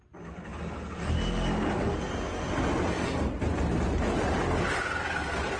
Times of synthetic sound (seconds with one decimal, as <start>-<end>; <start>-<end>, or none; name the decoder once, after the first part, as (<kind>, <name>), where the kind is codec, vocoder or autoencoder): none